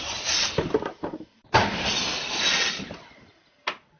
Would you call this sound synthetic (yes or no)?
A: no